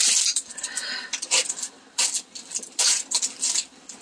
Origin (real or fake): real